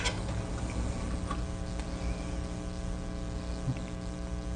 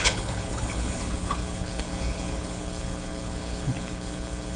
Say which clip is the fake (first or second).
second